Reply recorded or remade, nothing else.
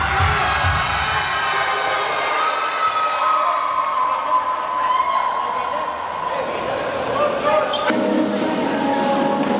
recorded